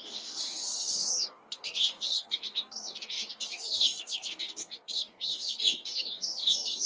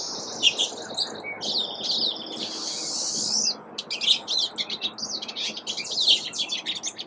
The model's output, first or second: first